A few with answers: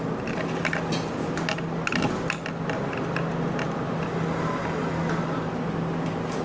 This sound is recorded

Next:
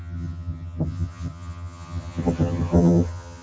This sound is remade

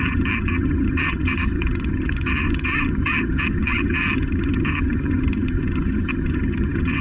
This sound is remade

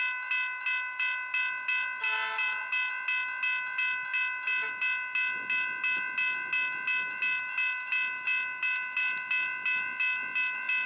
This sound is recorded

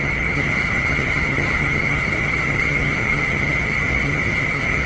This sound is remade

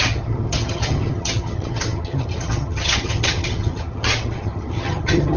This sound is remade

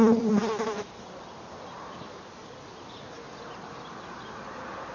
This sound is recorded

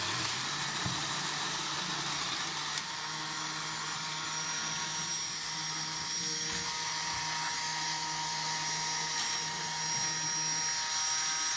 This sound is recorded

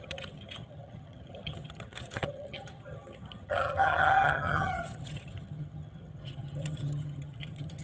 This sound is remade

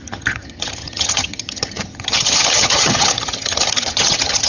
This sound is remade